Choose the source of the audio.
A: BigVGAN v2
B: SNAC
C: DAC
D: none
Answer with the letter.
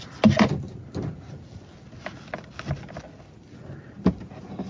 D